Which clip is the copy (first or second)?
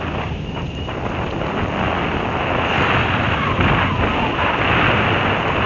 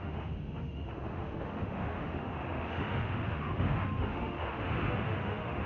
second